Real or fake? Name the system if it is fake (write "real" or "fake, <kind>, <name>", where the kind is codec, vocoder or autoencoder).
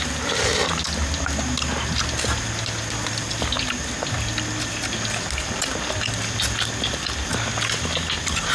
real